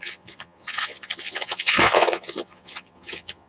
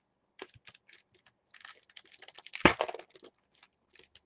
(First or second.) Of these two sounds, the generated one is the first